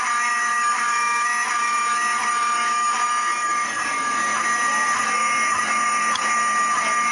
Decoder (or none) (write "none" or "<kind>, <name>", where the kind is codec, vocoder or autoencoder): autoencoder, DAC-VAE